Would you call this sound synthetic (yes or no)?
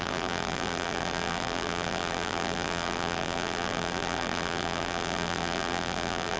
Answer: yes